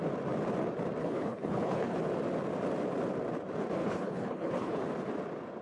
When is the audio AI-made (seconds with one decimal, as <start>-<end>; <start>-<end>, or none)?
1.0-2.0; 3.8-4.8